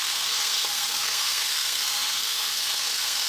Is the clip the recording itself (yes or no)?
no